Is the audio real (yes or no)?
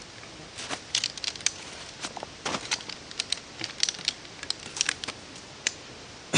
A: yes